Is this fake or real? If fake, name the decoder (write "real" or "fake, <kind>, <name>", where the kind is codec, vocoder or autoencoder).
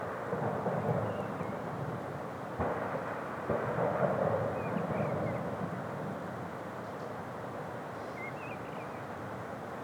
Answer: real